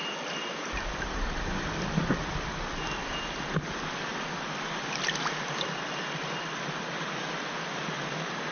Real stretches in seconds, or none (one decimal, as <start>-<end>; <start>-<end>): 1.6-4.1; 8.1-8.5